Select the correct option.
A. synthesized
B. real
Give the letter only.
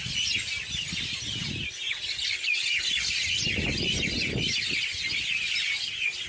B